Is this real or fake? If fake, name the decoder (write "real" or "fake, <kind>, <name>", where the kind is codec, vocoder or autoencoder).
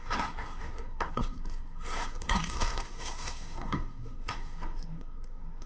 fake, codec, SNAC